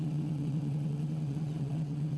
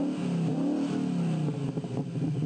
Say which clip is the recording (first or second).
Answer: second